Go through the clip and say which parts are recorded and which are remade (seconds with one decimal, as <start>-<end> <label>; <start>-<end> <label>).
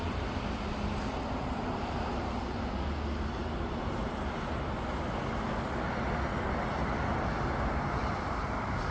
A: 0.0-8.0 recorded; 8.0-8.9 remade